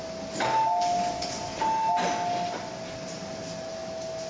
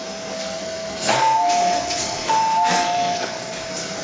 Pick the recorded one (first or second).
first